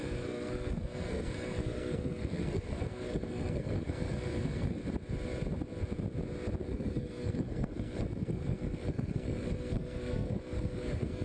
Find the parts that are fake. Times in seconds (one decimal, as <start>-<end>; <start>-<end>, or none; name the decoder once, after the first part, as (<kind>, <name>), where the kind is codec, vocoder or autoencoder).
0.0-4.8 (codec, SNAC); 6.6-11.2